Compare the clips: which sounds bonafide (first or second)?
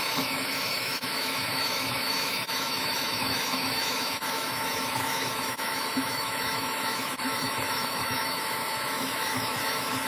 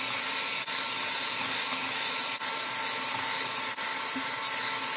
second